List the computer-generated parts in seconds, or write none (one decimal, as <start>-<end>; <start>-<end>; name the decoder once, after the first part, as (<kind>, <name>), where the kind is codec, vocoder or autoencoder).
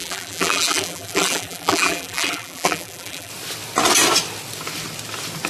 0.0-3.3 (vocoder, BigVGAN v2)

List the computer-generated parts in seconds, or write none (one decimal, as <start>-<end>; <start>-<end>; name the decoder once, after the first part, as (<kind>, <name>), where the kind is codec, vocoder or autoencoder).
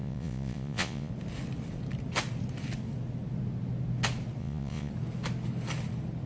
0.0-1.1 (vocoder, Vocos); 4.4-4.9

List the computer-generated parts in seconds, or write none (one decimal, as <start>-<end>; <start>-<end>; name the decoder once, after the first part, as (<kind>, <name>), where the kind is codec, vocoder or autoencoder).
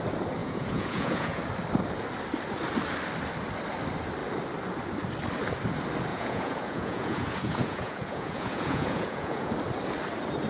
0.4-1.4 (vocoder, Vocos); 6.1-9.5